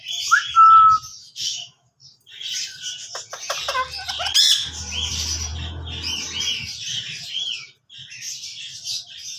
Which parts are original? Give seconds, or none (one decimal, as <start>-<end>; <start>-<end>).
0.0-1.1; 1.9-9.4